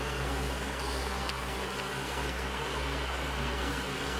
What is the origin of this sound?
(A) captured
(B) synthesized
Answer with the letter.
B